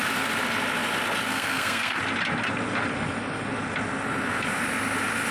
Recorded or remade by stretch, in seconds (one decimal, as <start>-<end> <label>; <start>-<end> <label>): 0.0-1.3 recorded; 1.3-2.0 remade; 2.0-5.3 recorded